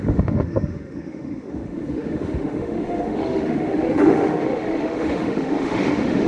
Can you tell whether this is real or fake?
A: fake